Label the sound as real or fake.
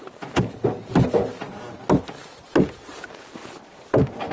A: real